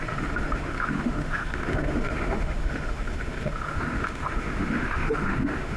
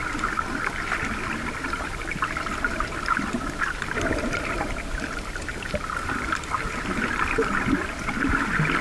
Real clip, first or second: second